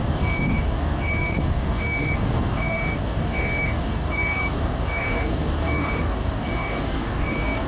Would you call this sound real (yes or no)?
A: no